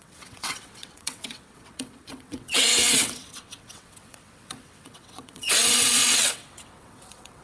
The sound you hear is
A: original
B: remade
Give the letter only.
B